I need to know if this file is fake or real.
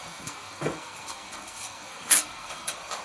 fake